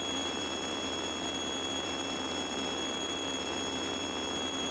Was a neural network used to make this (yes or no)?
yes